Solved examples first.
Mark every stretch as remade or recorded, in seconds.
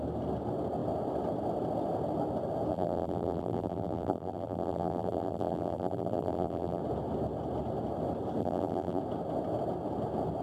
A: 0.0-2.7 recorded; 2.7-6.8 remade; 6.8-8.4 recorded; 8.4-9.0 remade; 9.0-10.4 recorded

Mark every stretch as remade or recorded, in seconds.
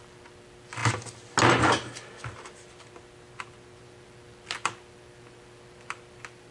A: 0.0-0.8 remade; 0.8-3.8 recorded; 3.8-6.5 remade